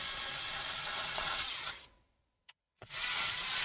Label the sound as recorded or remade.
remade